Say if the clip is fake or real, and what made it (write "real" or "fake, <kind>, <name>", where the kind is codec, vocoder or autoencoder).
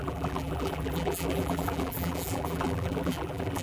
fake, vocoder, BigVGAN v2